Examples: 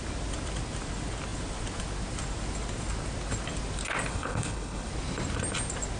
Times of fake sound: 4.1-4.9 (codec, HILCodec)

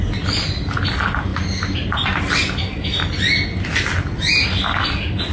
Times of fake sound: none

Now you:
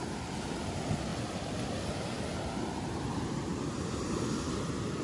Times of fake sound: none

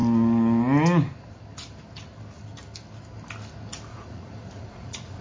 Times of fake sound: 3.9-5.2 (vocoder, Vocos)